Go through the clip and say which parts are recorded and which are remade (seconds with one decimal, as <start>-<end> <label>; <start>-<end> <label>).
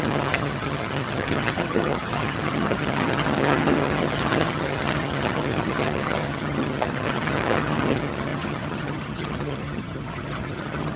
0.0-11.0 remade